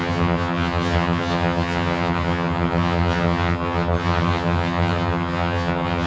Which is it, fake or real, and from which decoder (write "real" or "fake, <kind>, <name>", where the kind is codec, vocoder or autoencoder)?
fake, vocoder, HiFi-GAN